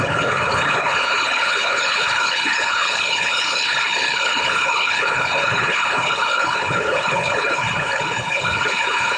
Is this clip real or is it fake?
fake